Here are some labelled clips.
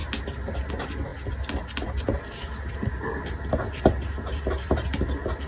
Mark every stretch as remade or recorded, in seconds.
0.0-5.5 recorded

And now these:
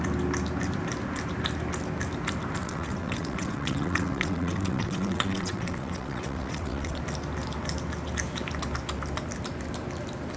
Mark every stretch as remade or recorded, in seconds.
0.0-2.6 recorded; 2.6-7.0 remade; 7.0-10.4 recorded